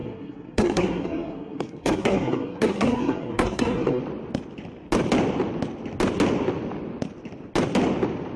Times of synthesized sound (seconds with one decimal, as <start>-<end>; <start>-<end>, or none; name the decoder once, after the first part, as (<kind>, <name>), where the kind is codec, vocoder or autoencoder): 0.0-4.0 (codec, SNAC)